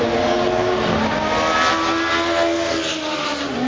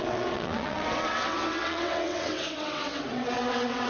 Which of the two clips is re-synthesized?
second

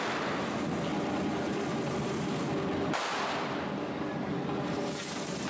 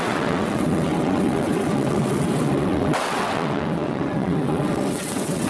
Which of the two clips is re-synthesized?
second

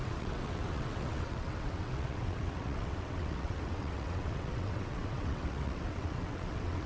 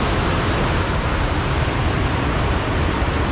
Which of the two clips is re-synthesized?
first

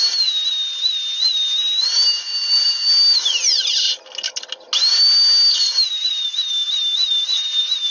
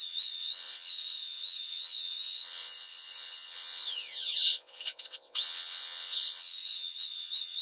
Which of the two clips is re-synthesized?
second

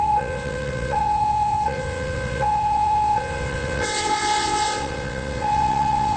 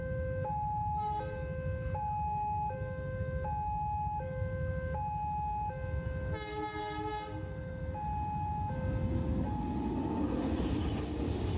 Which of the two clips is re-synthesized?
first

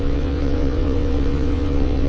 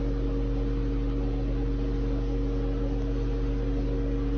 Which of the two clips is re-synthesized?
first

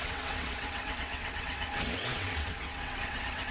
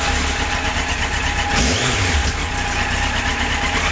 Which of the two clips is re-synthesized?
first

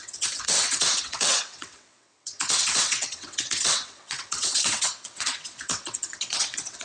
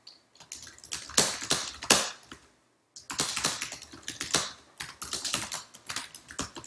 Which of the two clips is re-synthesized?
first